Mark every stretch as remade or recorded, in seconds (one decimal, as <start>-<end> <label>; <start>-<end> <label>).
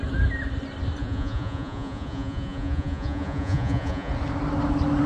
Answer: 0.0-1.0 recorded; 1.0-4.1 remade; 4.1-5.1 recorded